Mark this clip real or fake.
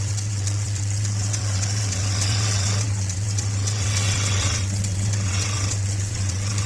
fake